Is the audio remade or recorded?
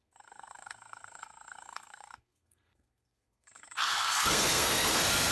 remade